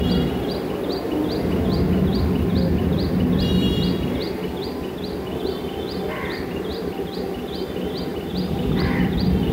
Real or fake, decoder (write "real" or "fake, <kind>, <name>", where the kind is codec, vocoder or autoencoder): fake, vocoder, BigVGAN v2